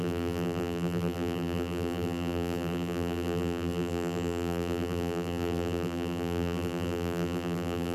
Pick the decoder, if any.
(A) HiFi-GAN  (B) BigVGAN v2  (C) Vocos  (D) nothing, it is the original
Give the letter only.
B